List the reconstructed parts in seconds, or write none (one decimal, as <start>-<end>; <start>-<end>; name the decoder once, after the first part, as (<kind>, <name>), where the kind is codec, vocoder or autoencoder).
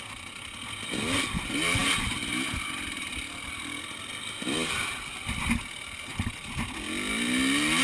none